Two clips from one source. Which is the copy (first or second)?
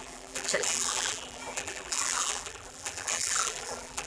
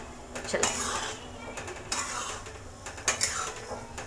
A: first